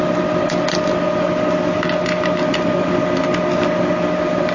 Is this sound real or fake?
real